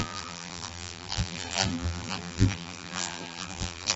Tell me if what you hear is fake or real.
fake